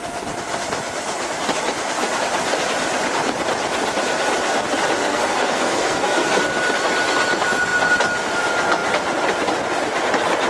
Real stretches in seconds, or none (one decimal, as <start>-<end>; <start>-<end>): 0.0-5.0; 6.4-10.5